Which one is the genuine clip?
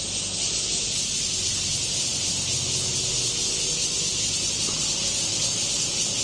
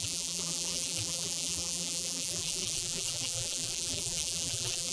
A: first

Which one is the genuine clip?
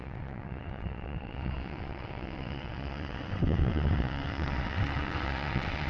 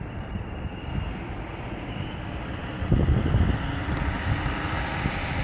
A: second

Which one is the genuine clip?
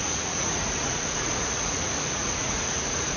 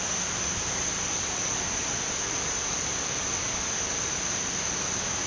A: second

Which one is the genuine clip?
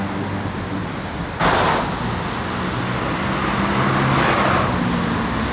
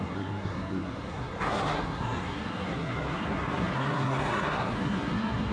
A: first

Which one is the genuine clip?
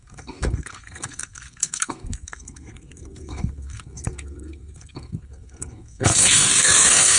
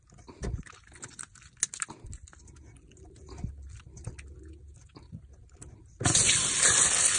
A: second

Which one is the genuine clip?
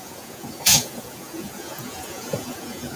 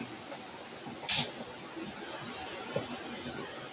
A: second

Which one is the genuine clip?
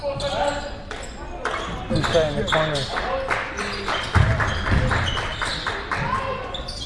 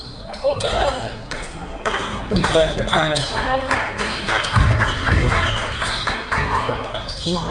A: first